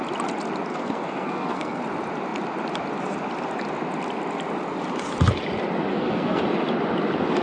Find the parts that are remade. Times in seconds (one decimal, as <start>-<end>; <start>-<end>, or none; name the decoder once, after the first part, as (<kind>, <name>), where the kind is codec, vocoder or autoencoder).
0.7-1.8 (codec, SNAC); 5.9-6.4